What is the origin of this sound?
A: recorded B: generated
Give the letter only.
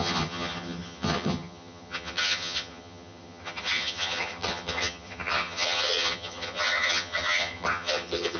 B